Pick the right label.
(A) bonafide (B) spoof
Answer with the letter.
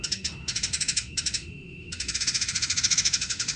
B